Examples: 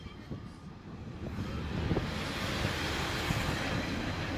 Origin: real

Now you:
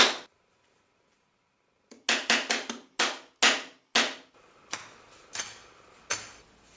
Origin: real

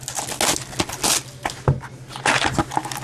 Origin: real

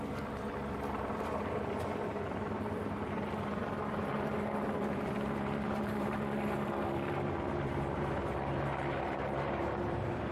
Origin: fake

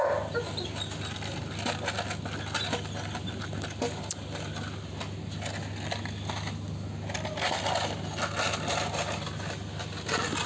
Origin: real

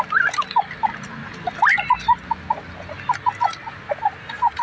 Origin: real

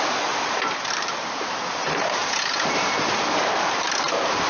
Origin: fake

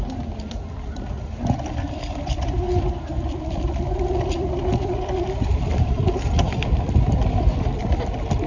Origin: fake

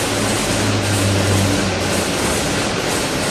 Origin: real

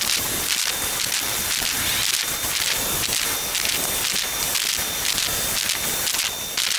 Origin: real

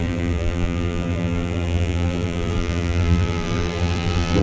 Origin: fake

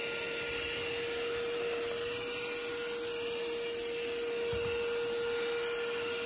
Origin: real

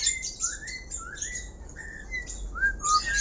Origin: real